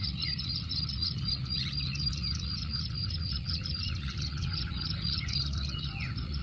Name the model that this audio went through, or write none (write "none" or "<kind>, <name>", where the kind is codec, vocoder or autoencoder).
vocoder, Vocos